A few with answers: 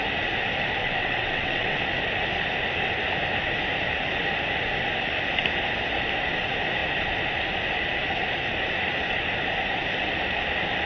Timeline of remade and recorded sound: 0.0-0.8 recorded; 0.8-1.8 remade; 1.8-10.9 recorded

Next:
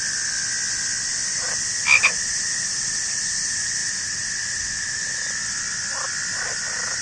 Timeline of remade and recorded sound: 0.0-7.0 recorded

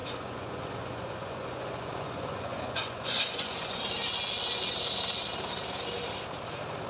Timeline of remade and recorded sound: 0.0-3.8 remade; 3.8-6.9 recorded